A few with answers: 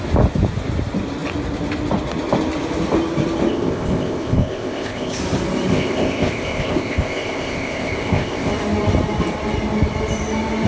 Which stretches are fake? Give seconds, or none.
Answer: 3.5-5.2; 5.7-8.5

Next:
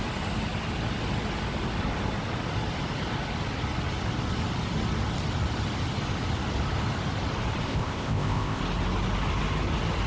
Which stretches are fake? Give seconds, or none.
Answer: 7.7-8.6

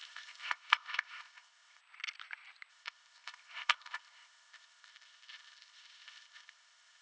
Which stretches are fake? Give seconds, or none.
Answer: 0.0-1.8; 2.7-7.0

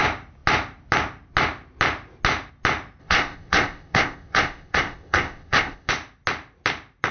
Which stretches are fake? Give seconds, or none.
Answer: 3.0-5.9

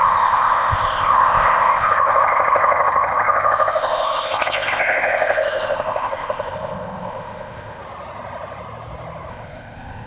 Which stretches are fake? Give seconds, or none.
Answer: 0.0-7.8; 9.3-10.1

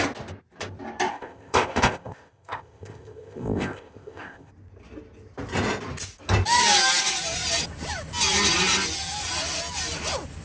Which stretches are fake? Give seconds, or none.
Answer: 1.1-4.5

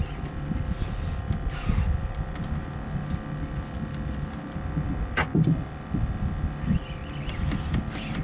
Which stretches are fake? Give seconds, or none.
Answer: none

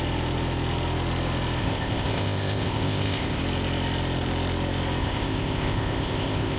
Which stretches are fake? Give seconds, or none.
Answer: 1.6-3.4; 5.0-6.6